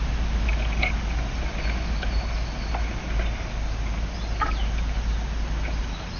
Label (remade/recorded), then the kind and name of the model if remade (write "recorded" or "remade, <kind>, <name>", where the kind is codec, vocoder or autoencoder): recorded